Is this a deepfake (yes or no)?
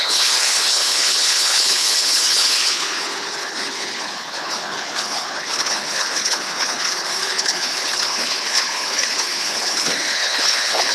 yes